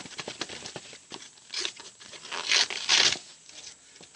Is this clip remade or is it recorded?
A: recorded